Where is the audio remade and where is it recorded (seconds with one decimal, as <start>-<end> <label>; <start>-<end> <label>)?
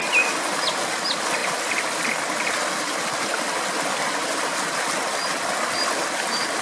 0.0-6.6 recorded